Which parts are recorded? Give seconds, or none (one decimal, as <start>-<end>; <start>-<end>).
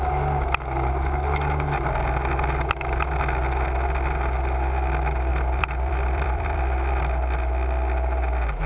0.0-5.3; 7.0-8.7